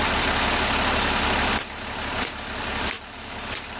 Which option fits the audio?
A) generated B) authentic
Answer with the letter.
B